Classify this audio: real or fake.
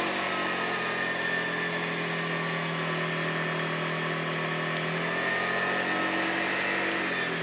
real